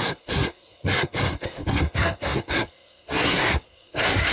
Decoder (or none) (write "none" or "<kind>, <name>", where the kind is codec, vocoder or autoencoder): codec, SNAC